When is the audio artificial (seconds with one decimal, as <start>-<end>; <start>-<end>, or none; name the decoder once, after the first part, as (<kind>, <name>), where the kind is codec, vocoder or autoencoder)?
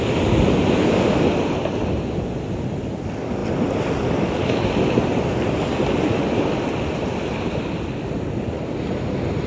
none